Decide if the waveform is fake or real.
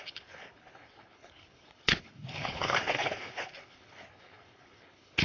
fake